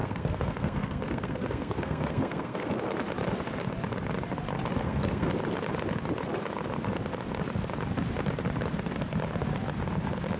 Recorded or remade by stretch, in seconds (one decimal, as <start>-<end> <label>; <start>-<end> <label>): 0.0-2.7 remade; 2.7-4.7 recorded; 4.7-5.3 remade; 5.3-10.4 recorded